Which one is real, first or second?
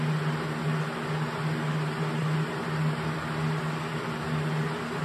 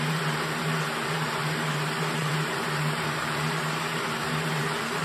first